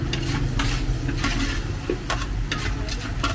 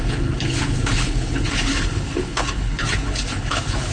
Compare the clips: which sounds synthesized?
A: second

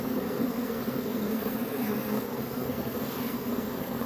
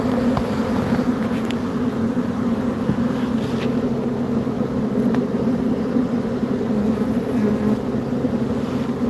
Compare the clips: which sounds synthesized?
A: first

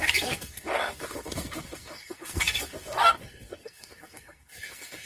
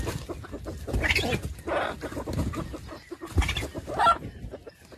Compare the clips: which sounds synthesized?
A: first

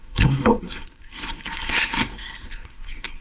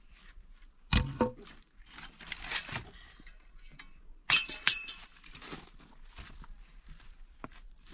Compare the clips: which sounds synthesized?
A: first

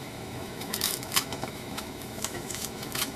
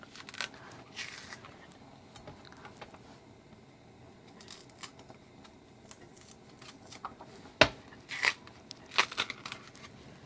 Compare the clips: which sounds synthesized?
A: first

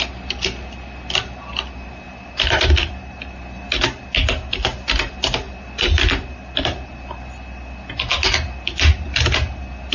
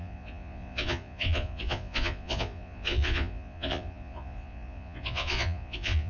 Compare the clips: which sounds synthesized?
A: second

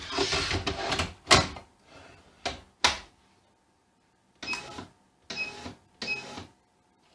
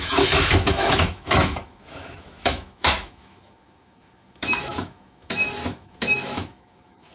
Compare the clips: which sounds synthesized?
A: second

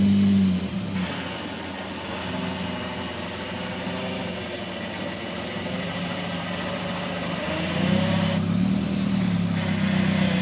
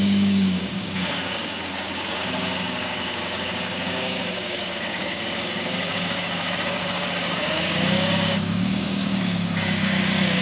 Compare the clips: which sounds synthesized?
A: second